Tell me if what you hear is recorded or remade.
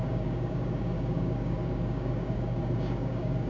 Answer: remade